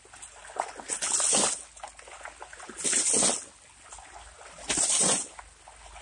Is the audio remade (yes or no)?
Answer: no